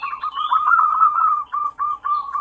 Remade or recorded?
remade